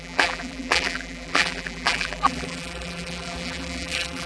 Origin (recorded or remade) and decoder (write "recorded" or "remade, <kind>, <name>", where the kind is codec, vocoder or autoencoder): remade, vocoder, BigVGAN v2